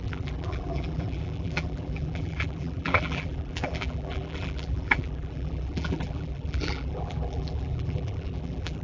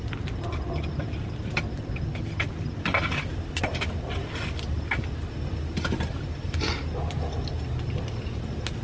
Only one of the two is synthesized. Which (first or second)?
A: first